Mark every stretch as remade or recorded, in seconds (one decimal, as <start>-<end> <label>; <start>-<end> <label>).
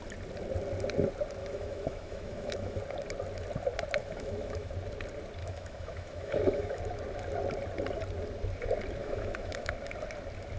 0.0-1.4 recorded; 1.4-2.8 remade; 2.8-4.0 recorded; 4.0-4.7 remade; 4.7-5.4 recorded; 5.4-6.8 remade; 6.8-9.0 recorded; 9.0-9.7 remade; 9.7-10.6 recorded